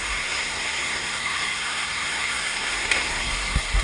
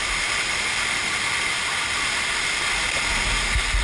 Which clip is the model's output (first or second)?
first